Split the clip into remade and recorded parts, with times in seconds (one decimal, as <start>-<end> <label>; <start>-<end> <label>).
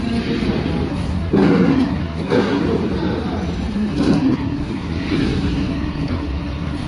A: 0.0-0.9 recorded; 0.9-2.6 remade; 2.6-3.7 recorded; 3.7-6.9 remade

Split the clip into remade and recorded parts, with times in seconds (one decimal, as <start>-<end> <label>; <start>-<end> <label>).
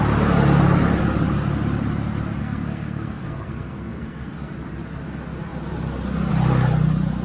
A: 0.0-2.4 recorded; 2.4-4.5 remade; 4.5-7.2 recorded